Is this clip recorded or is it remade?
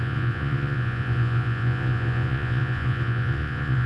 remade